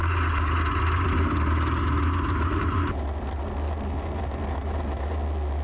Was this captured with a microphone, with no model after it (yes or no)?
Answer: yes